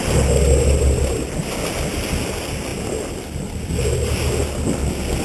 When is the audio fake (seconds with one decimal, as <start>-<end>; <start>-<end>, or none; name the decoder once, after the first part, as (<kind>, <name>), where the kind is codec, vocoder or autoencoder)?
none

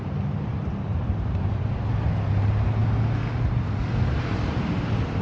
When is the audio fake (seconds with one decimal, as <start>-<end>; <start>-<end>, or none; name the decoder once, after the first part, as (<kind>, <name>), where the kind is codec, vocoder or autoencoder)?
0.5-1.6 (vocoder, BigVGAN v2)

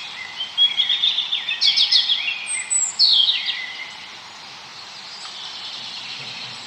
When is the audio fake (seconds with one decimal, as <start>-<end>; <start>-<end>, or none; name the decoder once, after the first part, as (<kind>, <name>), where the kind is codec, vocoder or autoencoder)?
0.0-0.8 (vocoder, BigVGAN v2); 4.7-6.7

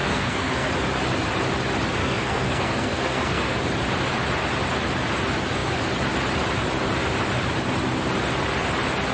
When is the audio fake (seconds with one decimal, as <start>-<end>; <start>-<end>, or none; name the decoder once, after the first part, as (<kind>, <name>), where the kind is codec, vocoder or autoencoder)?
0.0-0.7 (codec, SNAC); 2.0-3.6

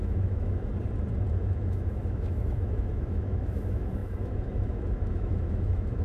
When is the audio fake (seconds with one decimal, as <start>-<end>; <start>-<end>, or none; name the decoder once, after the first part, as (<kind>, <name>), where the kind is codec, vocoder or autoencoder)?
0.0-0.7 (autoencoder, DAC-VAE); 1.4-6.0

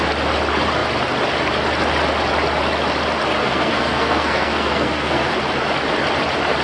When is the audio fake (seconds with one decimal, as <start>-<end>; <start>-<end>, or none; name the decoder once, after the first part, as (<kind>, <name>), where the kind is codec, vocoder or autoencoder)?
3.4-5.3 (codec, SNAC)

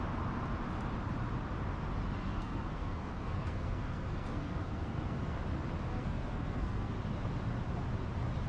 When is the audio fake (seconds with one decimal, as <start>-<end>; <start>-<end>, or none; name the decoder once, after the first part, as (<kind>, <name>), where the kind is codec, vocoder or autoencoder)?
2.3-5.4 (codec, SNAC); 5.9-6.9

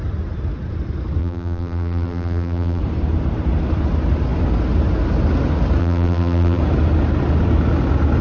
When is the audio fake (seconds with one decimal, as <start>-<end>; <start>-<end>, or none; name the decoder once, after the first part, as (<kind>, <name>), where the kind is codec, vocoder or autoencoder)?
1.2-2.8 (vocoder, BigVGAN v2); 5.8-6.6